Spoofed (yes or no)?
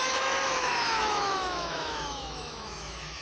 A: yes